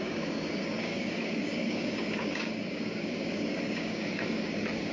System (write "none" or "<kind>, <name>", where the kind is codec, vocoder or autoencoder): codec, DAC